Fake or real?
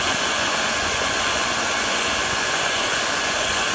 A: fake